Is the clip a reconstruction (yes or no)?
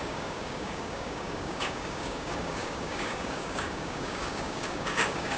yes